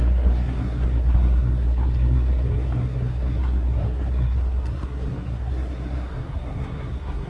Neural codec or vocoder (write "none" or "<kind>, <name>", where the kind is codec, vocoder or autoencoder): codec, SNAC